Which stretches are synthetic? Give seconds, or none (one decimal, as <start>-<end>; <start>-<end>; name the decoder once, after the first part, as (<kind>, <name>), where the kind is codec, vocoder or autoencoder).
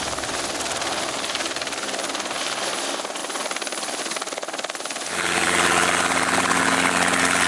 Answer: none